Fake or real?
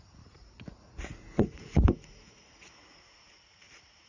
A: fake